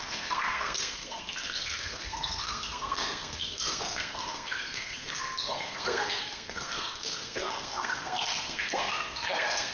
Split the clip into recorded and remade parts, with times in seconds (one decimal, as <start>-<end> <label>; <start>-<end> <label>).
0.0-9.7 remade